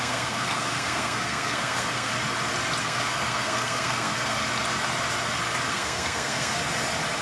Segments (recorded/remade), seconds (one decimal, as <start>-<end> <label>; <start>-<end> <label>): 0.0-2.1 remade; 2.1-2.8 recorded; 2.8-4.4 remade; 4.4-5.7 recorded; 5.7-6.6 remade; 6.6-7.2 recorded